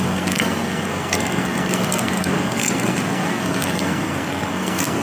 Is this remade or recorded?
remade